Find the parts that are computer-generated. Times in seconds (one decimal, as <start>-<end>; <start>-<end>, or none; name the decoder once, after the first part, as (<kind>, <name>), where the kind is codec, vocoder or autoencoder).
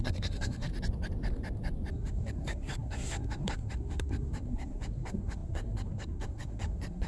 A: 0.0-0.7 (codec, SNAC); 1.9-7.1